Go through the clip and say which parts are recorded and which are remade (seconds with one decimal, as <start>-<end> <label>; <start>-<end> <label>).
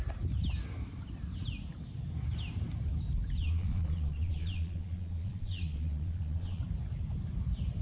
0.0-3.4 recorded; 3.4-6.6 remade; 6.6-7.8 recorded